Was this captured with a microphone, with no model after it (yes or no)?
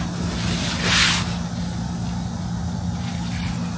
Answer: yes